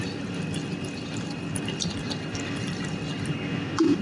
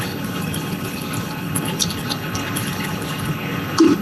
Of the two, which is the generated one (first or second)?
second